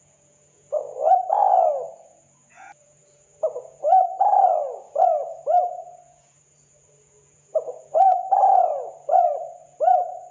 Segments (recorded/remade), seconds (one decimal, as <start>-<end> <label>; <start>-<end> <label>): 0.0-1.4 remade; 1.4-1.9 recorded; 1.9-10.3 remade

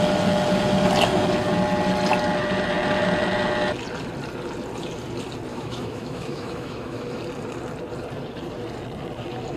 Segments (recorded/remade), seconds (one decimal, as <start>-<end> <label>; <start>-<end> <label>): 0.0-5.5 recorded; 5.5-7.2 remade; 7.2-9.6 recorded

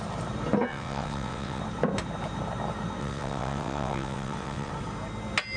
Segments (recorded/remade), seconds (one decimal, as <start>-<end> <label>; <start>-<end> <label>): 0.0-0.7 recorded; 0.7-1.6 remade; 1.6-3.0 recorded; 3.0-4.7 remade; 4.7-5.6 recorded

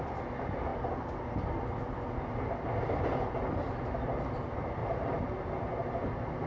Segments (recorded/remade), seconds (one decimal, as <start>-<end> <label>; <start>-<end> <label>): 0.0-4.8 recorded; 4.8-5.5 remade; 5.5-6.5 recorded

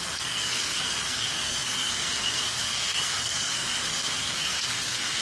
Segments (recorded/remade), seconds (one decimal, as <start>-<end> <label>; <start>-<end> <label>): 0.0-5.2 remade

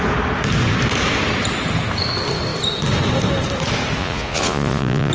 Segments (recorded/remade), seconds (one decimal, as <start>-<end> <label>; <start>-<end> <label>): 0.0-4.0 recorded; 4.0-5.1 remade

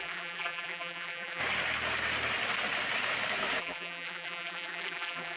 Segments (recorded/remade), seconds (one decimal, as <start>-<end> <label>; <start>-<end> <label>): 0.0-1.4 remade; 1.4-3.6 recorded; 3.6-5.4 remade